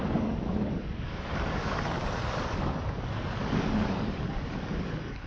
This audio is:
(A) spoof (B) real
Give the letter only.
A